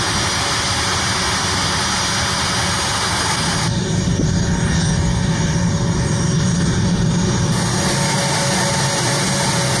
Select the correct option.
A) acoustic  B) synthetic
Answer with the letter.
A